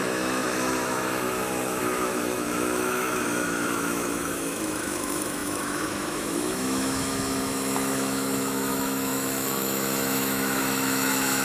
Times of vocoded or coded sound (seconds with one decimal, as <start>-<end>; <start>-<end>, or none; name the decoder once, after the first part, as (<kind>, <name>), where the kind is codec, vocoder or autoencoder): 0.0-11.4 (autoencoder, DAC-VAE)